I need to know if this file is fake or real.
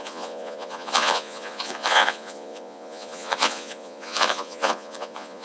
fake